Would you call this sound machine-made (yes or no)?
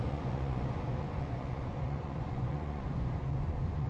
yes